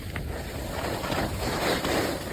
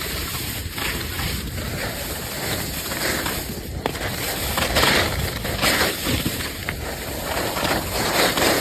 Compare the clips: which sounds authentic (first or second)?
second